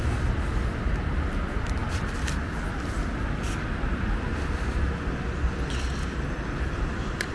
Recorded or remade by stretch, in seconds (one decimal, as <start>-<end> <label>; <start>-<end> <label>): 0.0-7.3 recorded